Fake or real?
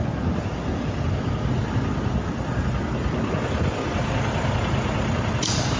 real